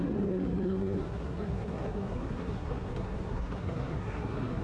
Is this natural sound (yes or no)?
no